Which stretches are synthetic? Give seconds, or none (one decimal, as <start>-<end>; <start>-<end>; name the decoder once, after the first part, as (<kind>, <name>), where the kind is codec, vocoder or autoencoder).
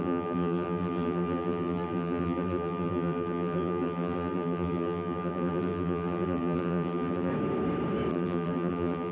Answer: 0.0-7.3 (vocoder, BigVGAN v2); 8.1-9.1